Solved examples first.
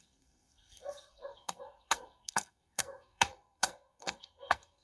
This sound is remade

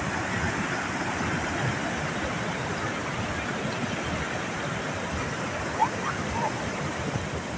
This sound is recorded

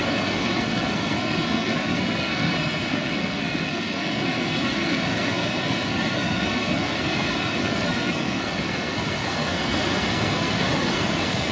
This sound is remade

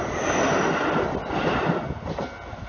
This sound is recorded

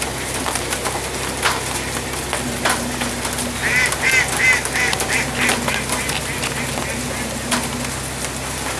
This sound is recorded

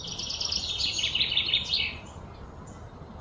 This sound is recorded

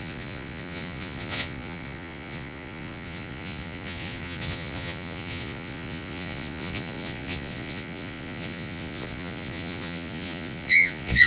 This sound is remade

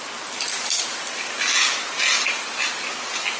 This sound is recorded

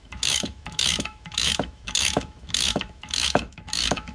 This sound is remade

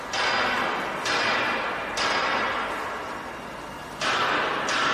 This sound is recorded